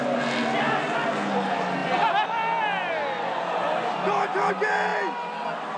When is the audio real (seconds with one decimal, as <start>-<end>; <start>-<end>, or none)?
0.0-5.8